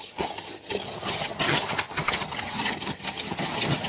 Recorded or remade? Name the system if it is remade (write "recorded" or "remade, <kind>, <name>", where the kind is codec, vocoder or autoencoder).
remade, vocoder, HiFi-GAN